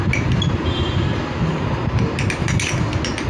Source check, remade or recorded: recorded